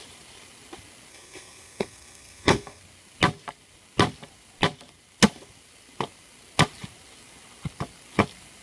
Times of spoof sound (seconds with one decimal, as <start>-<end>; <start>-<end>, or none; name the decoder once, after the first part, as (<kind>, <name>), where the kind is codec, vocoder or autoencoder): 1.1-2.8 (codec, SNAC)